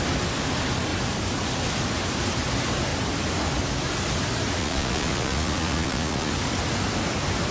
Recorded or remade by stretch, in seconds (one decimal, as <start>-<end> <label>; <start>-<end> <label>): 0.0-4.6 recorded; 4.6-6.3 remade; 6.3-7.5 recorded